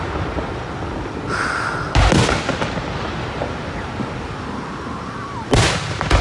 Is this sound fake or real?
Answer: real